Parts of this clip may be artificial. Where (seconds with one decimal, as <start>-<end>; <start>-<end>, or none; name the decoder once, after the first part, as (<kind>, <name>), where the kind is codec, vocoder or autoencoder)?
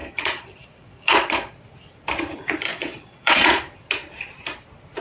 0.0-1.6 (vocoder, Vocos); 2.7-3.6